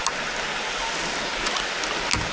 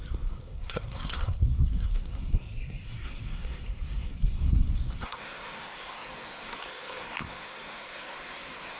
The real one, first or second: first